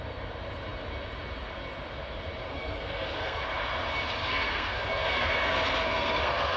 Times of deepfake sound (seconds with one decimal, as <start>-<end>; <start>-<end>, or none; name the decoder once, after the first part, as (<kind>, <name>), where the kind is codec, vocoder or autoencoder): 2.5-3.4 (codec, SNAC); 4.2-6.6